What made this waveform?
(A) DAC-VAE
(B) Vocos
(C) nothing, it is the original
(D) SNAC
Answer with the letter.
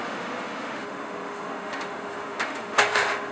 A